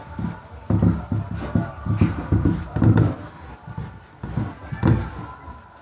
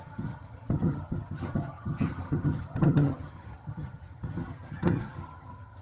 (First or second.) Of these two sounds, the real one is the first